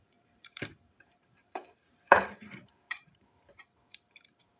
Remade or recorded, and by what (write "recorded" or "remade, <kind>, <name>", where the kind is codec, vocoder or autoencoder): remade, vocoder, BigVGAN v2